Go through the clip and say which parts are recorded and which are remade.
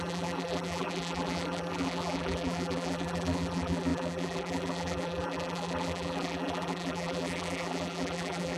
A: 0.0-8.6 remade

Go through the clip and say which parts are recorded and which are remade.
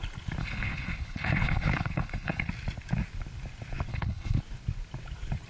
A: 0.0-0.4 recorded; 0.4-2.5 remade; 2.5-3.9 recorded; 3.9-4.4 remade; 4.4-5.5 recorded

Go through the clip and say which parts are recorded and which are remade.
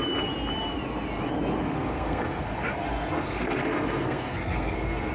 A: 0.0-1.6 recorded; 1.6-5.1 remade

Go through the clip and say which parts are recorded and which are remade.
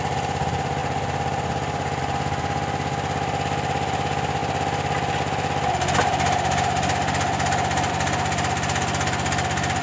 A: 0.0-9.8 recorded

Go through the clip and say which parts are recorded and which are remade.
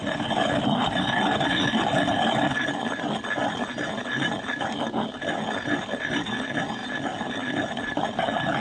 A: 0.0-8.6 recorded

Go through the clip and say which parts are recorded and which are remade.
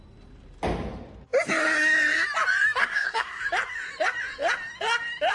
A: 0.0-2.8 recorded; 2.8-3.4 remade; 3.4-5.3 recorded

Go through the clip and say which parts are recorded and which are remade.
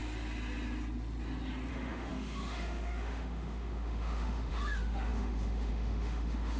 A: 0.0-1.7 recorded; 1.7-6.6 remade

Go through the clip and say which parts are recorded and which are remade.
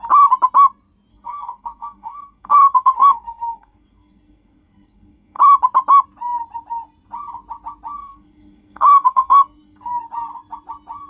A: 0.0-1.1 recorded; 1.1-5.4 remade; 5.4-8.0 recorded; 8.0-9.9 remade; 9.9-11.1 recorded